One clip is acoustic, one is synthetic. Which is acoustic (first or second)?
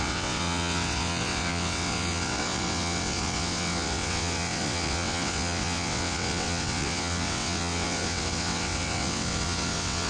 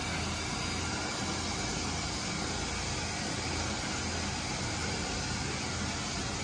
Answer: second